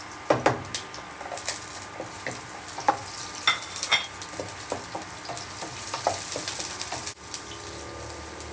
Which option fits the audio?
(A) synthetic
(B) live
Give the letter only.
B